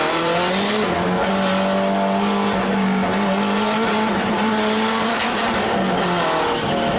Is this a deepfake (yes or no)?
no